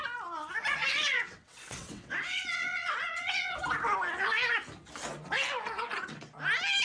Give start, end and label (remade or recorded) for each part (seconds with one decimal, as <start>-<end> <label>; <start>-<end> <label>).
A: 0.0-1.1 recorded; 1.1-3.6 remade; 3.6-6.8 recorded